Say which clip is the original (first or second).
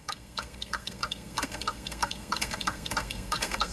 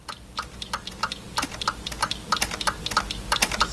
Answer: second